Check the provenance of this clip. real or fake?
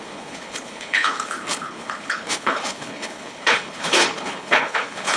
fake